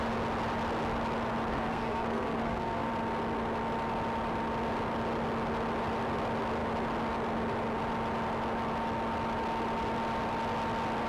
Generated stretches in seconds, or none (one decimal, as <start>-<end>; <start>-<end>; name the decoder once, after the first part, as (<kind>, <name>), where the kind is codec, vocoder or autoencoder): 1.5-2.9 (codec, SNAC)